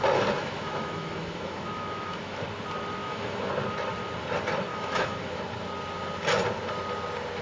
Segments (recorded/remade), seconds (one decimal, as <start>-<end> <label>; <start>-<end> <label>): 0.0-0.4 recorded; 0.4-2.4 remade; 2.4-3.0 recorded; 3.0-3.5 remade; 3.5-4.7 recorded; 4.7-5.4 remade; 5.4-7.4 recorded